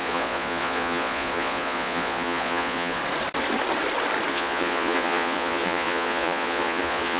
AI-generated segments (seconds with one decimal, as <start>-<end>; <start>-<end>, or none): 0.0-3.0; 4.3-7.2